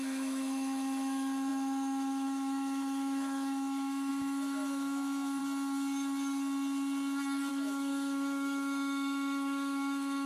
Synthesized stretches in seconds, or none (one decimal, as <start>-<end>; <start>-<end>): 0.0-5.4; 7.5-10.3